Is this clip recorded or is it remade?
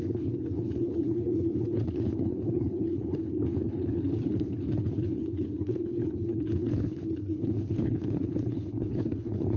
remade